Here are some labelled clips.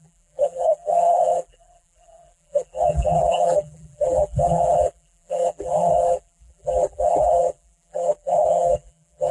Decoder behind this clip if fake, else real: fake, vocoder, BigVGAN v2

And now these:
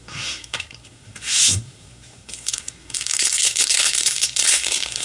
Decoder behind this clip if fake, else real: fake, codec, SNAC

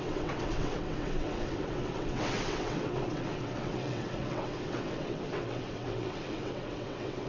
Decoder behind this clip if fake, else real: fake, vocoder, WaveNeXt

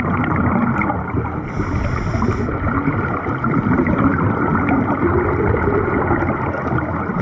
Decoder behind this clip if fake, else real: real